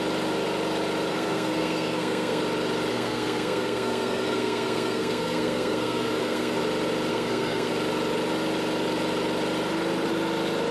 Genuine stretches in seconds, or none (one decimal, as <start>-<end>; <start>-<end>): 0.0-1.1; 2.4-2.9; 6.6-7.1; 7.7-10.7